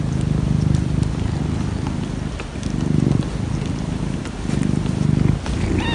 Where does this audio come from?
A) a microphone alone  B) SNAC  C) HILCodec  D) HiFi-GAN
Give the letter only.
A